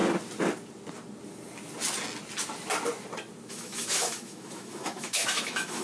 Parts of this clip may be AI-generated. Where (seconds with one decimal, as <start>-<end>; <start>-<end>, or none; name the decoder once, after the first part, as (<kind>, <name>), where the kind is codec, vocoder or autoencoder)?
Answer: 3.5-5.8 (autoencoder, DAC-VAE)